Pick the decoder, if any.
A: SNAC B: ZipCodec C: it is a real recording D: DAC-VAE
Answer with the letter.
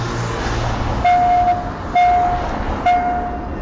C